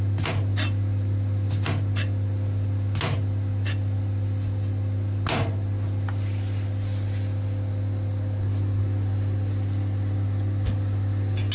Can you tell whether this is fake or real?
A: real